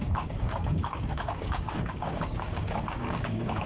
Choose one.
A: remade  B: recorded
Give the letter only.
A